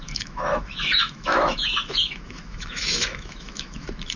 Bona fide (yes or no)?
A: no